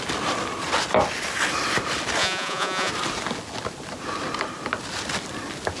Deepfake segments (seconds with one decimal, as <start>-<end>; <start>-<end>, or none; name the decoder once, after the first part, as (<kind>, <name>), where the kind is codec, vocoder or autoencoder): 2.2-2.9 (vocoder, Vocos)